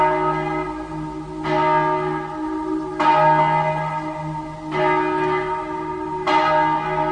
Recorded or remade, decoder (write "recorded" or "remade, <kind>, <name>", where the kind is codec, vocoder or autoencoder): recorded